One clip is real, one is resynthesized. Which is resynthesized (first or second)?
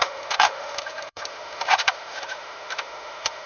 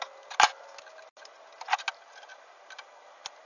first